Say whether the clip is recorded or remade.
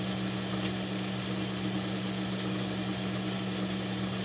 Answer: recorded